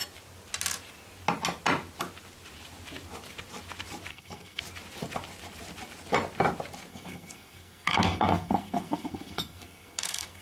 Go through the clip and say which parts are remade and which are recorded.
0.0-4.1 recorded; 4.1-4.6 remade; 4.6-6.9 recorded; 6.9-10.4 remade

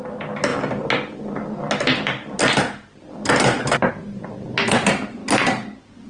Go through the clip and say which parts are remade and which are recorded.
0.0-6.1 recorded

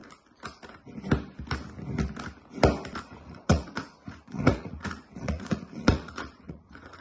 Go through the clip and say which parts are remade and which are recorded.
0.0-3.0 recorded; 3.0-7.0 remade